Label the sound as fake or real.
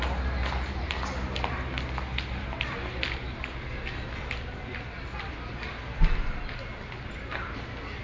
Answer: real